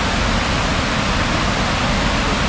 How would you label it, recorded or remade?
recorded